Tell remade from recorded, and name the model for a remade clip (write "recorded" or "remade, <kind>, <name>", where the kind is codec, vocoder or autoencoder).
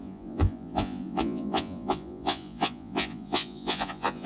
remade, vocoder, Vocos